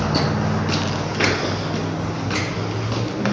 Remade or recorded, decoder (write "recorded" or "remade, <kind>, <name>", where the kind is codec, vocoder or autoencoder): recorded